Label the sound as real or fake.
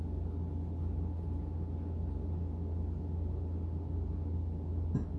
real